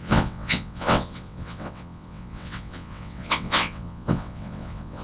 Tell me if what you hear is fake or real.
fake